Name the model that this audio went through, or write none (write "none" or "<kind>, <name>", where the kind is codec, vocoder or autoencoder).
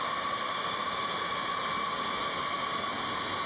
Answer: none